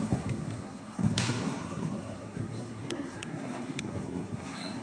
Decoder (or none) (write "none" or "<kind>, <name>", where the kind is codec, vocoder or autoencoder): codec, SNAC